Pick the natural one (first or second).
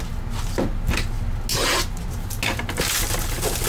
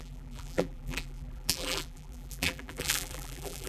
first